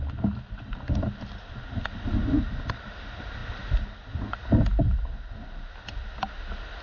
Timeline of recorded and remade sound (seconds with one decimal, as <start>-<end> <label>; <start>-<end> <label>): 0.0-6.8 recorded